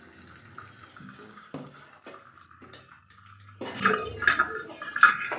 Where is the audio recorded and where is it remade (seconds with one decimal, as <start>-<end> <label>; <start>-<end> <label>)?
0.0-0.9 recorded; 0.9-1.9 remade; 1.9-5.4 recorded